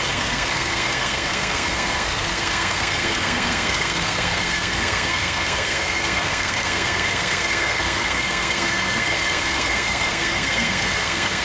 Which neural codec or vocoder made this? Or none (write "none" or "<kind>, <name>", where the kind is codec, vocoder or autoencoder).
codec, SNAC